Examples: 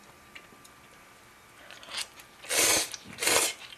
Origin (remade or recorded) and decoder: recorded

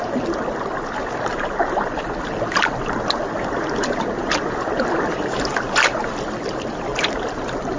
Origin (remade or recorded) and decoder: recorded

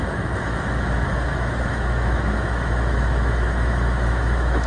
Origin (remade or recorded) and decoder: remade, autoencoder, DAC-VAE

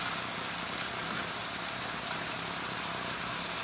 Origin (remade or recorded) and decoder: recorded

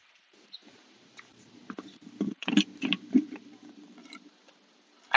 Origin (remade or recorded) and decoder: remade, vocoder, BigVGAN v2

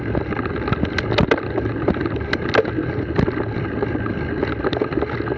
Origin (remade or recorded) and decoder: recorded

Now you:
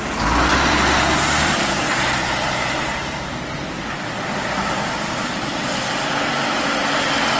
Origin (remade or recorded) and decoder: recorded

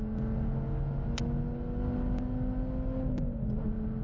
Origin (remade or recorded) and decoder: recorded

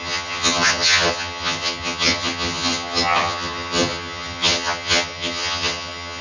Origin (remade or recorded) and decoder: remade, vocoder, HiFi-GAN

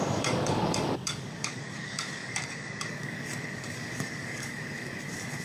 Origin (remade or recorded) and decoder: remade, codec, DAC